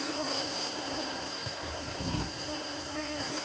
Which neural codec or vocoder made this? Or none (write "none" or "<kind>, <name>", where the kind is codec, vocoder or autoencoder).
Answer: codec, SNAC